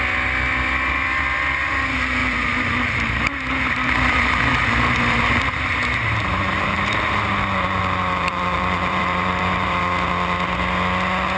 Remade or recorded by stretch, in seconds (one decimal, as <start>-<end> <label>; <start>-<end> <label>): 0.0-2.2 recorded; 2.2-7.3 remade; 7.3-7.8 recorded; 7.8-9.8 remade; 9.8-11.4 recorded